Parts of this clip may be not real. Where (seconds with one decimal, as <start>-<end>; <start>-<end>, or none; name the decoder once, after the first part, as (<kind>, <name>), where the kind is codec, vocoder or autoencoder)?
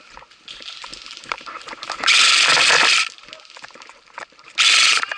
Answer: none